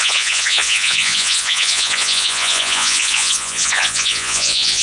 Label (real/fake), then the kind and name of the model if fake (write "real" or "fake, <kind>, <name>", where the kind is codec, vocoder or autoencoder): fake, vocoder, Vocos